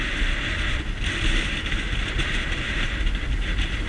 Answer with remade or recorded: recorded